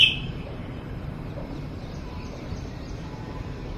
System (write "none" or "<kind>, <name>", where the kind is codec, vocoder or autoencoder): vocoder, BigVGAN v2